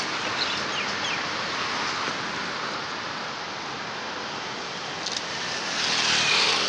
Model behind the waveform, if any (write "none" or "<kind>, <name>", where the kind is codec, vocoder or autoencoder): none